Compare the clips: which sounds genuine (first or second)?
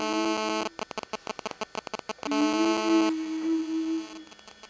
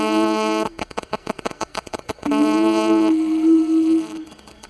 first